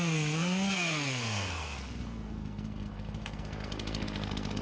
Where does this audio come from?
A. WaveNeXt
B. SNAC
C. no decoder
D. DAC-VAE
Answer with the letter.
B